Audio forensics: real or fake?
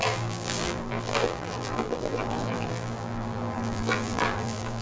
fake